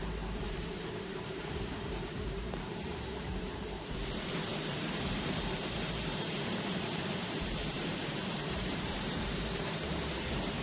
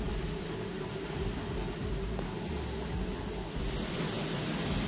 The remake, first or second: first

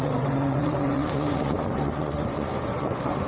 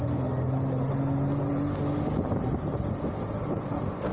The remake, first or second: first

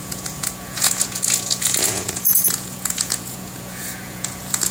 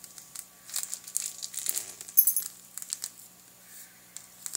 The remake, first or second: first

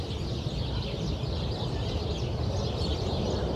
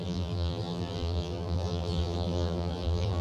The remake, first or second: second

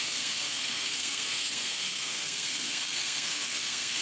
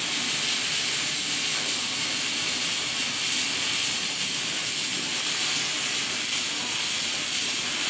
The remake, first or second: first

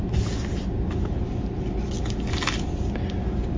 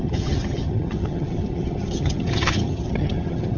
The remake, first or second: second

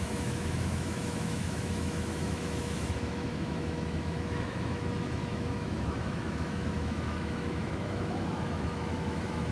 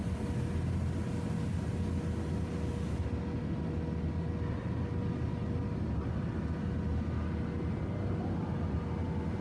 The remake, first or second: first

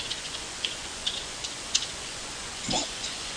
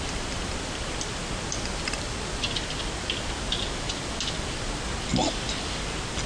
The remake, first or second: first